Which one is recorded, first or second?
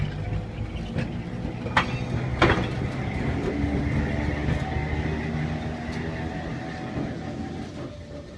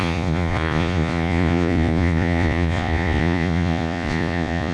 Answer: first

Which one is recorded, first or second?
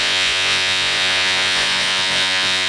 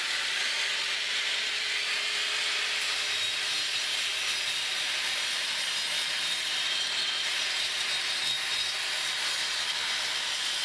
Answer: second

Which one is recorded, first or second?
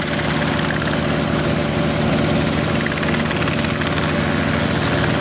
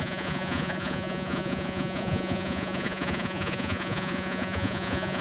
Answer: first